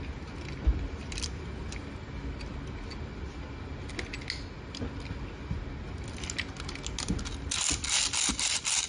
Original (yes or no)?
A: yes